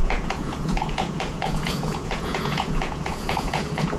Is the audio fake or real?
fake